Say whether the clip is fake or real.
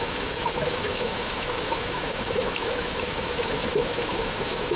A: fake